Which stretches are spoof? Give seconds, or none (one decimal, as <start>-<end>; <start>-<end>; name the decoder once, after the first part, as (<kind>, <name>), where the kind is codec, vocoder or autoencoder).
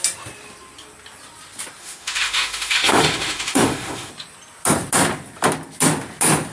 1.8-4.1 (autoencoder, DAC-VAE)